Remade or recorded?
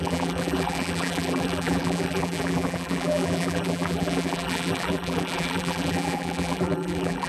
remade